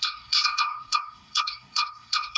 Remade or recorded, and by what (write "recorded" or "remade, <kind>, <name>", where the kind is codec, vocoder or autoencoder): remade, codec, SNAC